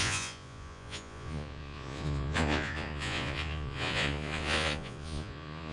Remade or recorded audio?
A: remade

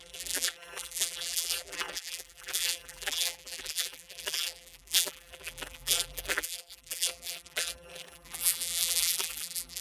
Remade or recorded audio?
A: remade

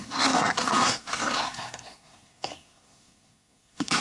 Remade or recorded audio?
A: remade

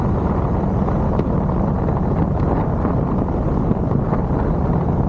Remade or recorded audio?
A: recorded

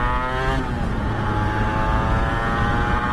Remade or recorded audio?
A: recorded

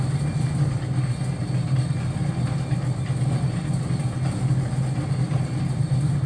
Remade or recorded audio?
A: recorded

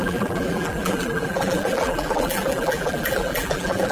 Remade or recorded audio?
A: remade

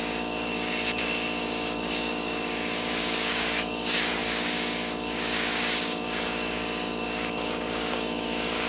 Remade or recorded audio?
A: remade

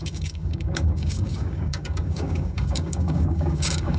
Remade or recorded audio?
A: remade